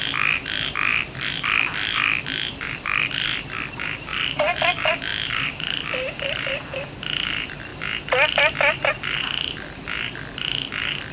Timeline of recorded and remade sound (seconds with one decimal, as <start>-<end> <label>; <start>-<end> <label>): 0.0-0.9 recorded; 0.9-3.0 remade; 3.0-4.1 recorded; 4.1-4.6 remade; 4.6-5.1 recorded; 5.1-6.9 remade; 6.9-11.1 recorded